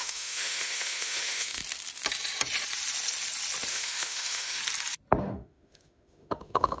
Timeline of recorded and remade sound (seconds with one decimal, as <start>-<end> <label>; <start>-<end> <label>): 0.0-1.6 remade; 1.6-3.7 recorded; 3.7-4.6 remade; 4.6-5.2 recorded; 5.2-6.8 remade